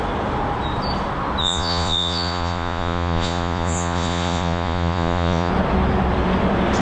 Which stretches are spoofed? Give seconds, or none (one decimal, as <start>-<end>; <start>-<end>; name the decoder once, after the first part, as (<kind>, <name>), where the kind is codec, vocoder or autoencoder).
1.4-5.5 (vocoder, Vocos)